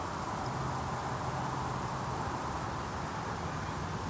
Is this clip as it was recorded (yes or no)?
yes